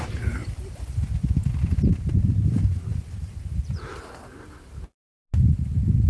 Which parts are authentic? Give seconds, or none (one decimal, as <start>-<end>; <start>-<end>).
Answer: 0.0-6.1